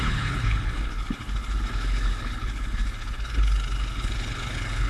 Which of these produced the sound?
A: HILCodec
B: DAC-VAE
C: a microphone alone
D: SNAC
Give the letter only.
A